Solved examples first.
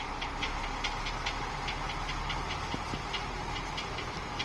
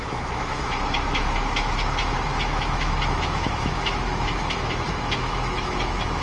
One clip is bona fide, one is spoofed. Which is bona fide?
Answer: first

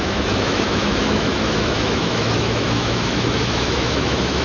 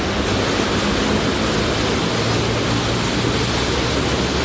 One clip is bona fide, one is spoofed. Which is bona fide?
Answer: second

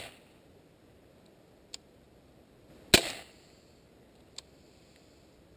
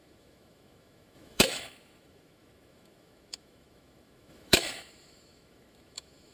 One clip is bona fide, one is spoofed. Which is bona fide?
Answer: first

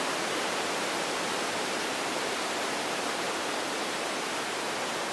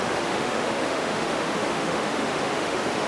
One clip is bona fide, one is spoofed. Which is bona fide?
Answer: first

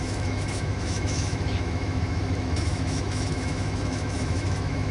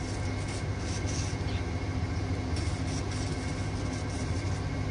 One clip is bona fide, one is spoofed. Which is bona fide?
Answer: second